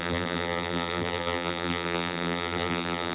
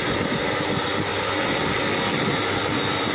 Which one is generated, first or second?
first